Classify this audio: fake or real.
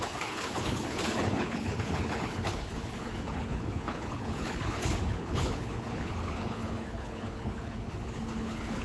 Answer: fake